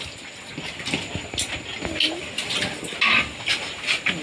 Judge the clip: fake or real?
real